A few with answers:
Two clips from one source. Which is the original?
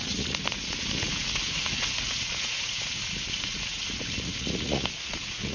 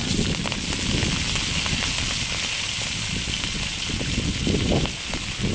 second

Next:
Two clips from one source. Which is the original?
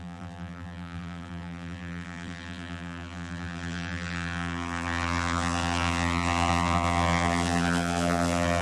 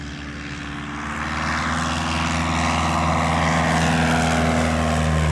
second